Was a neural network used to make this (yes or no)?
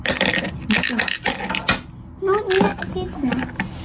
no